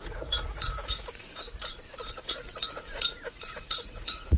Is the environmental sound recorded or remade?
remade